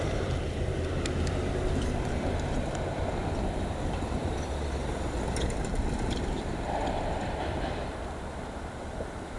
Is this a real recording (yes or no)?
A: no